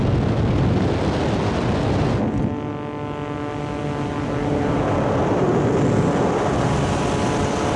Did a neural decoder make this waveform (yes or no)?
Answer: no